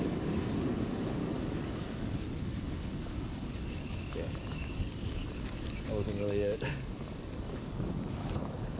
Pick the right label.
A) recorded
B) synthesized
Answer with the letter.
B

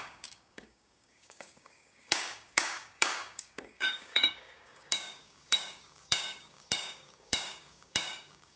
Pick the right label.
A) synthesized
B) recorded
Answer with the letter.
A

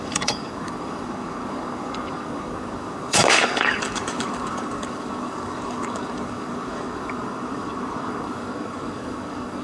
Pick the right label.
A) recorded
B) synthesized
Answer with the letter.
B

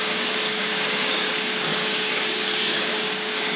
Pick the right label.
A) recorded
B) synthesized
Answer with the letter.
B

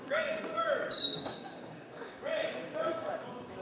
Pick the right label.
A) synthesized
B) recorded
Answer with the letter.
A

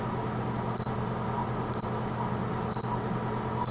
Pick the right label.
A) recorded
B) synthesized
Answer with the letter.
A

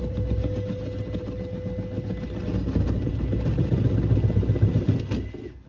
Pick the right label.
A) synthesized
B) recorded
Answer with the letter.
B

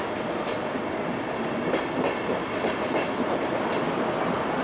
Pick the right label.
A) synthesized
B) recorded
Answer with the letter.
B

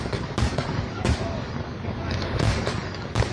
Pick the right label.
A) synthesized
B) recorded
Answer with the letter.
A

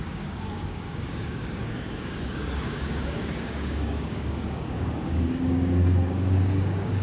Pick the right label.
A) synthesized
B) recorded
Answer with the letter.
A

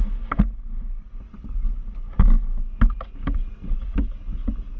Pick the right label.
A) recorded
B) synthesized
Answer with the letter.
A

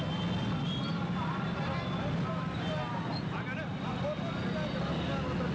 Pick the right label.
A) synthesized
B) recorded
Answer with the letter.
B